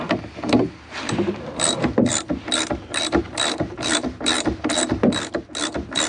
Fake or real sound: real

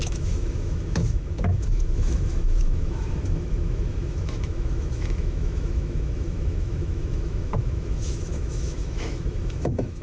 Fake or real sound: fake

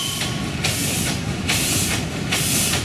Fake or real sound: real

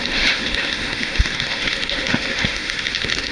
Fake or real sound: fake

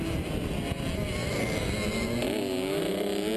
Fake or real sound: real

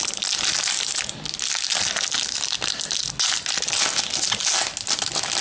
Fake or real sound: real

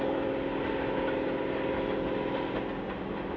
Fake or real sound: real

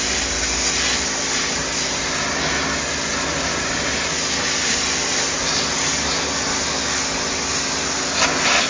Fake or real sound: real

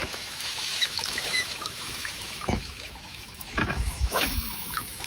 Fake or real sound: fake